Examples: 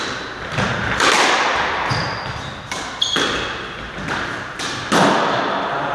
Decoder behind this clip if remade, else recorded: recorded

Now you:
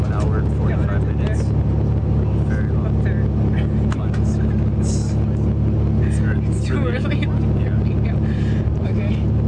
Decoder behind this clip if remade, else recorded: recorded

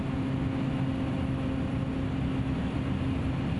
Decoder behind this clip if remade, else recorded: recorded